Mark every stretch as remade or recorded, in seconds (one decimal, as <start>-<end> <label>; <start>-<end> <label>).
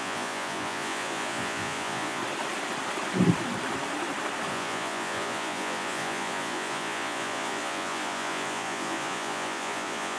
0.0-2.2 remade; 2.2-4.5 recorded; 4.5-10.2 remade